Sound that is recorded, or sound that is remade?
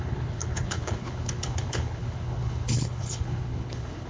remade